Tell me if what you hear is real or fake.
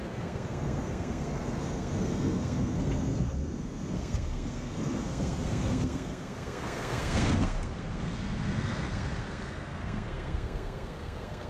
fake